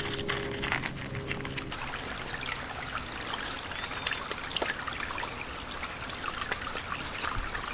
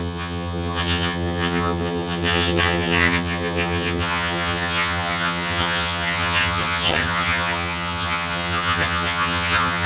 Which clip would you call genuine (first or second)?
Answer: first